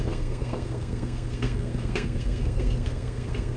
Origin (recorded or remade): remade